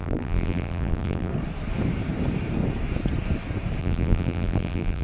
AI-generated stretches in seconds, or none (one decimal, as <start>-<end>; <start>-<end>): 0.0-1.3; 3.8-5.0